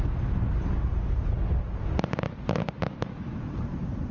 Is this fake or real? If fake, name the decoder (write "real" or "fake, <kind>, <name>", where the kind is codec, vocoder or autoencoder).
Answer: real